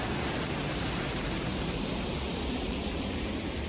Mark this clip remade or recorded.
remade